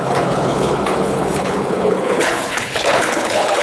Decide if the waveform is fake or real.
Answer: fake